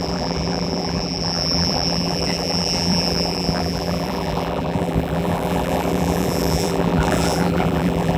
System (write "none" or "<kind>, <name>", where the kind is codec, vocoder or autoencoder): vocoder, BigVGAN v2